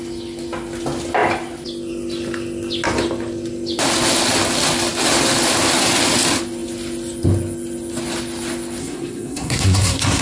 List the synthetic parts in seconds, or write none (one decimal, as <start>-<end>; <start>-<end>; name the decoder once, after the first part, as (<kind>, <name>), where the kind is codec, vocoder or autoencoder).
8.8-10.2 (codec, SNAC)